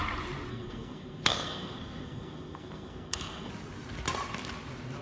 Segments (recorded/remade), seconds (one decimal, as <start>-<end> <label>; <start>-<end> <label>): 0.0-0.5 recorded; 0.5-3.5 remade; 3.5-5.0 recorded